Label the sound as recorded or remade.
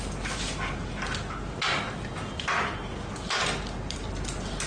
recorded